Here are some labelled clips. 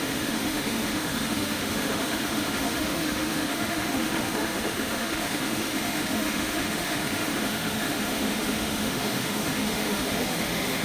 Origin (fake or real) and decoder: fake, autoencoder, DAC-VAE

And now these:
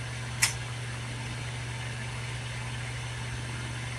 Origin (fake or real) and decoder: real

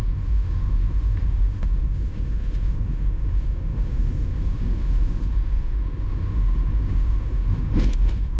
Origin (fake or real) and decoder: fake, autoencoder, DAC-VAE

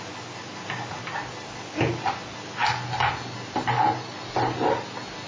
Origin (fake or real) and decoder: real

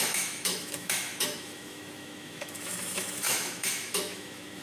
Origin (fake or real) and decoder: fake, autoencoder, DAC-VAE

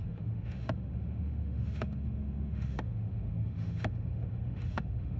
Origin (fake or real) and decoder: fake, autoencoder, DAC-VAE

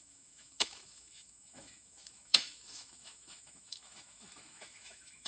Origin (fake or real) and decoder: fake, autoencoder, DAC-VAE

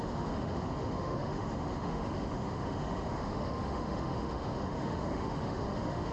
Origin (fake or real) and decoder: fake, autoencoder, DAC-VAE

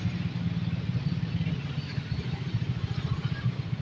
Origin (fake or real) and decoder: real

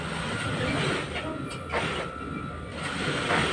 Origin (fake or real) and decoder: real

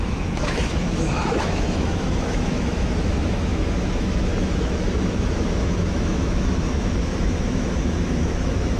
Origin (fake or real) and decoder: fake, autoencoder, DAC-VAE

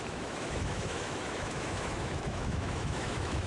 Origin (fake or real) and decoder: fake, autoencoder, DAC-VAE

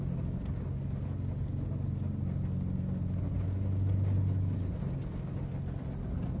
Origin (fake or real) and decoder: real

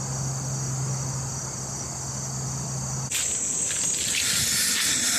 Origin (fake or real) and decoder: real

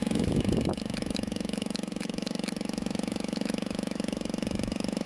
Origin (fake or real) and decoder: fake, autoencoder, DAC-VAE